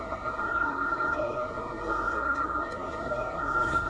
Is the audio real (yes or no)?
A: no